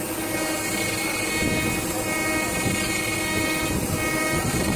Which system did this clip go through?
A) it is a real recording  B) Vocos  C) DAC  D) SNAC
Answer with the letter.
A